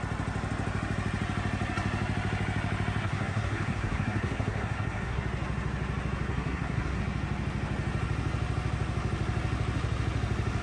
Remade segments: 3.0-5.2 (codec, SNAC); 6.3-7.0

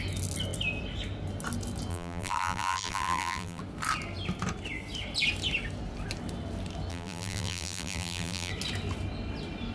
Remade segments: 1.9-3.6 (vocoder, BigVGAN v2); 6.9-8.5

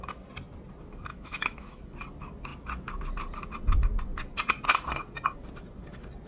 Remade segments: 1.1-1.8 (autoencoder, DAC-VAE)

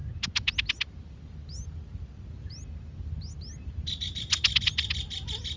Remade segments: none

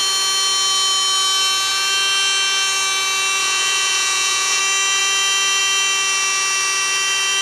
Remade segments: 3.4-4.6 (vocoder, Vocos)

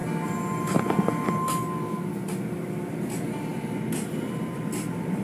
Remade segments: none